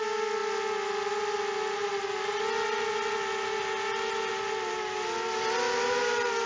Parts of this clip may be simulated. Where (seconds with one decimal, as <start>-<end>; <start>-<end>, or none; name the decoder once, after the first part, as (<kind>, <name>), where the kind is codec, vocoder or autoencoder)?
none